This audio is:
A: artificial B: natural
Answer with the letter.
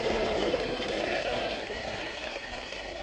A